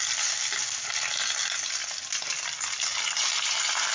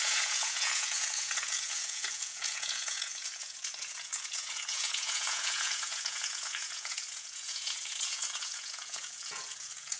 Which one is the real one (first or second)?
first